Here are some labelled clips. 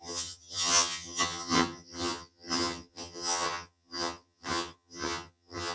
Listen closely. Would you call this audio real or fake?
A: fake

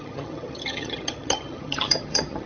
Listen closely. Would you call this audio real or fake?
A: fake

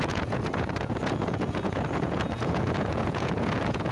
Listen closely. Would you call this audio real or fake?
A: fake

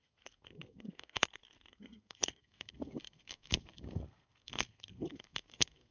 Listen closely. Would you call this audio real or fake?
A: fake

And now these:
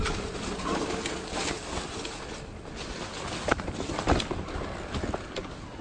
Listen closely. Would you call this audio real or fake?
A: real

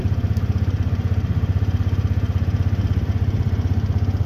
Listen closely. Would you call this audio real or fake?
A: fake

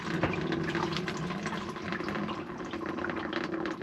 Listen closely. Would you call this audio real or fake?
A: real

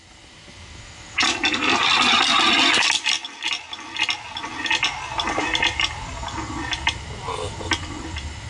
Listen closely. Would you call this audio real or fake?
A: real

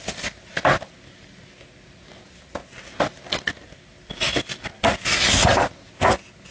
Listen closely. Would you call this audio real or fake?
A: real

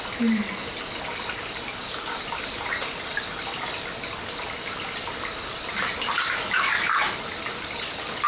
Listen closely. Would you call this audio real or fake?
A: real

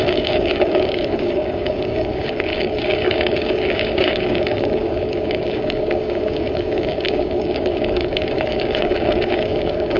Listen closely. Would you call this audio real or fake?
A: fake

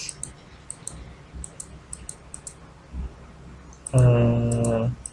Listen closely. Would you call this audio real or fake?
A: real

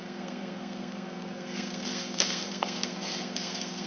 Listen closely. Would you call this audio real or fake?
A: fake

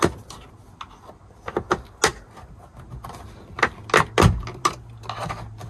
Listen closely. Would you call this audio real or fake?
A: real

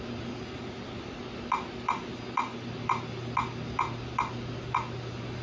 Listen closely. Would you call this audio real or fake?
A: real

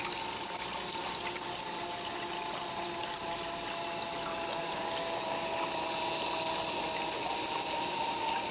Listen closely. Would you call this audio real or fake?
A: real